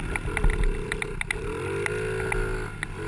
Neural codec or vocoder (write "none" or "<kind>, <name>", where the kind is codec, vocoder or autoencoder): none